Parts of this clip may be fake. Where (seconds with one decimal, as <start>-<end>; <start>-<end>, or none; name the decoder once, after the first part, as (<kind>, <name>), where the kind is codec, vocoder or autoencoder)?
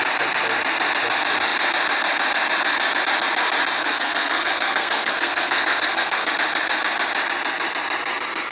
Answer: 3.8-6.3 (codec, SNAC)